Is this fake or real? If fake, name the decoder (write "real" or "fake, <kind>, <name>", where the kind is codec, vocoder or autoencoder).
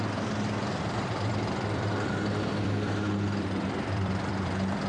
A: fake, vocoder, BigVGAN v2